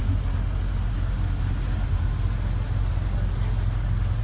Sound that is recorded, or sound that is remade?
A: recorded